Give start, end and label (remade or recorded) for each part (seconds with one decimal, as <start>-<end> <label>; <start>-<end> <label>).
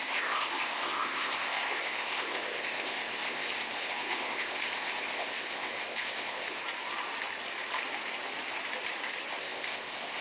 0.0-6.6 remade; 6.6-9.4 recorded; 9.4-10.2 remade